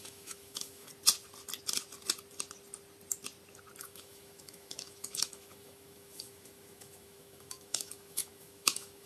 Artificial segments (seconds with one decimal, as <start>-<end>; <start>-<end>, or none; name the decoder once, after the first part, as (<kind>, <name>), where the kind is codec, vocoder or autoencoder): 0.0-0.9 (autoencoder, DAC-VAE); 3.8-9.1